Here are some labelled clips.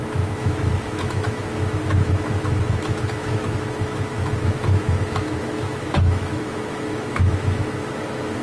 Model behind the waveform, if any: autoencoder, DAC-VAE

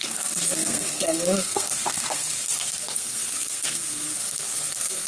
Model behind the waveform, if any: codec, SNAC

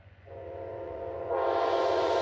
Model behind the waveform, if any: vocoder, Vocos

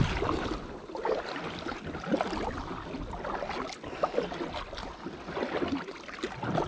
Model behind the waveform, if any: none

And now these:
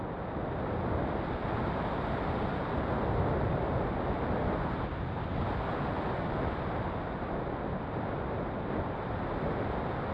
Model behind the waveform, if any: none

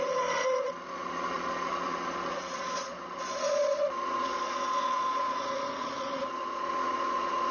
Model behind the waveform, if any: vocoder, Vocos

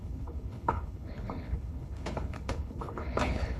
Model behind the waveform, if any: codec, HILCodec